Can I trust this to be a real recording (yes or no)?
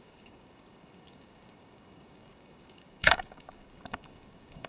no